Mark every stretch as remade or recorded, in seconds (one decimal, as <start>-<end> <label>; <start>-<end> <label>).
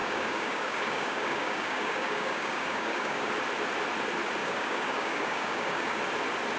0.0-3.3 remade; 3.3-4.4 recorded; 4.4-6.0 remade; 6.0-6.6 recorded